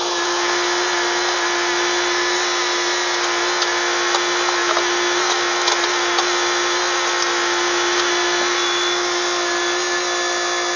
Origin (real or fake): real